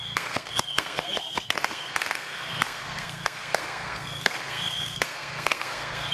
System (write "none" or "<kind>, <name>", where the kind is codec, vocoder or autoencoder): codec, SNAC